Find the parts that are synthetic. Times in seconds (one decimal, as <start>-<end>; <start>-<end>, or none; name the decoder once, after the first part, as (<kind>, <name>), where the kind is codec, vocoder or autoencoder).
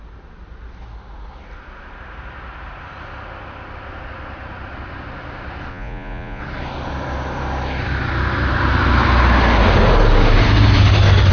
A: 5.7-6.4 (vocoder, Vocos)